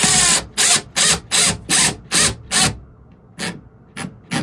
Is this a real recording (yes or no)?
yes